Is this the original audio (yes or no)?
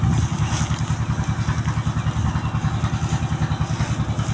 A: yes